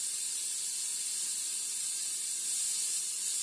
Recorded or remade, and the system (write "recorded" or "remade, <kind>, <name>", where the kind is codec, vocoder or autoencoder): recorded